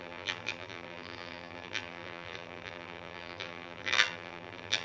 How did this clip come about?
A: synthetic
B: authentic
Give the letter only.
A